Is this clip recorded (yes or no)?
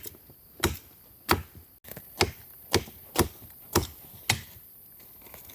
yes